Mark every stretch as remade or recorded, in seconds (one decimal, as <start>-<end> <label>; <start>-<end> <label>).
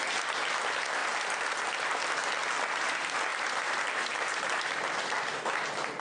0.0-1.0 recorded; 1.0-1.8 remade; 1.8-3.3 recorded; 3.3-5.3 remade; 5.3-6.0 recorded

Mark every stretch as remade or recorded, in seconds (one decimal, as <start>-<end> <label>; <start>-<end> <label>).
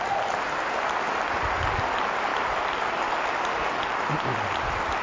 0.0-2.3 recorded; 2.3-3.1 remade; 3.1-3.9 recorded; 3.9-4.5 remade; 4.5-5.0 recorded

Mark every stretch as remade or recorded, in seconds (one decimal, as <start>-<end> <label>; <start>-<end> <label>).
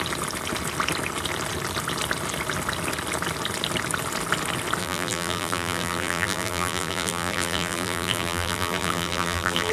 0.0-4.8 recorded; 4.8-9.7 remade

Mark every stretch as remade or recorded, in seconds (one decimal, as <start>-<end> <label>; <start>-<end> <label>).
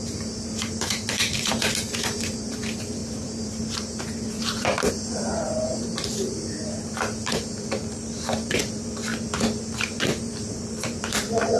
0.0-9.1 remade; 9.1-9.8 recorded; 9.8-11.6 remade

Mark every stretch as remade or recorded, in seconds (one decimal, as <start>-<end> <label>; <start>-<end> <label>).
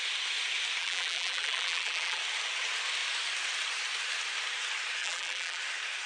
0.0-0.8 recorded; 0.8-2.2 remade; 2.2-5.0 recorded; 5.0-5.6 remade; 5.6-6.1 recorded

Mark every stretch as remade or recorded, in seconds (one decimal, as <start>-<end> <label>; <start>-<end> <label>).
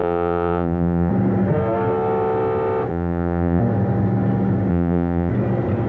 0.0-1.1 remade; 1.1-2.9 recorded; 2.9-3.6 remade; 3.6-4.7 recorded; 4.7-5.3 remade; 5.3-5.9 recorded